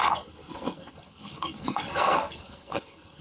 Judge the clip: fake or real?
fake